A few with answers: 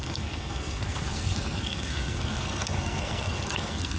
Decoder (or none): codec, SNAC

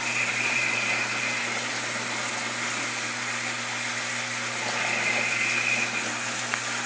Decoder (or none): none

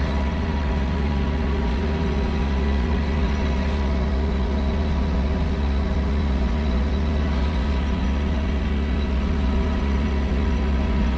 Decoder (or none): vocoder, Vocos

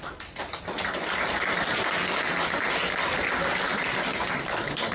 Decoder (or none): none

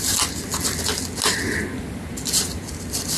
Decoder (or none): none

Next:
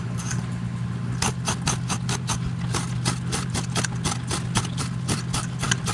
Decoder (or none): none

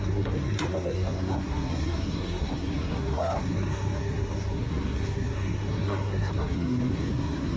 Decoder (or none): codec, SNAC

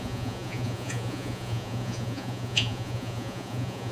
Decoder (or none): vocoder, Vocos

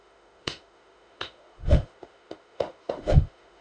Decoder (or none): autoencoder, DAC-VAE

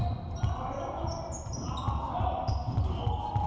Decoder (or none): none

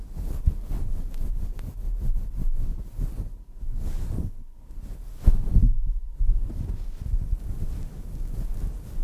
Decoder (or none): none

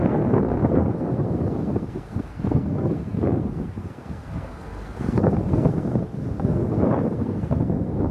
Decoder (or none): codec, SNAC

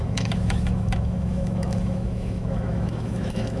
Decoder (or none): autoencoder, DAC-VAE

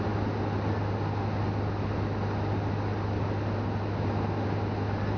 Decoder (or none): none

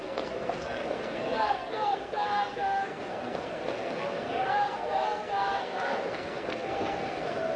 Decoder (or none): codec, SNAC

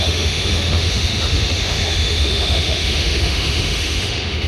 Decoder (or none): autoencoder, DAC-VAE